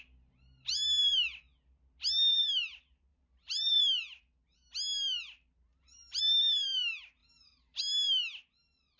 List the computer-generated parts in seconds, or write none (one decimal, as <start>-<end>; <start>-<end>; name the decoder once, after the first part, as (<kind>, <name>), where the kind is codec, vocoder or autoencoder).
3.1-3.8 (vocoder, BigVGAN v2); 5.7-6.2; 7.2-7.8